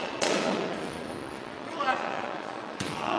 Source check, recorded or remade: remade